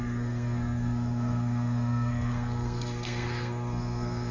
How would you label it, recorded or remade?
remade